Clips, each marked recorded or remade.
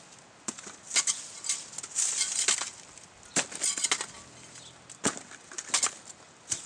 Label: recorded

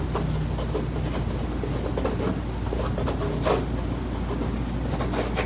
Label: recorded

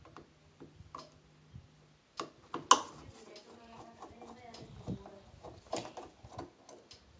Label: recorded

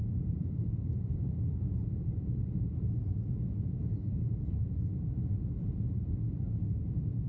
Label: remade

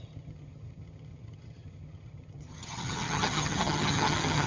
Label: remade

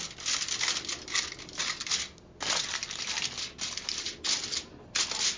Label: recorded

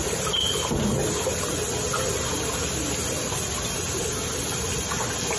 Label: recorded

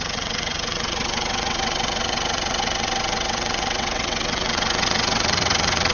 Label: remade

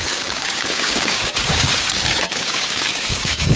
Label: remade